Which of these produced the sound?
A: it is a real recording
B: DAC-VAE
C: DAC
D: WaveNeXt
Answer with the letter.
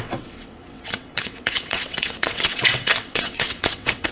D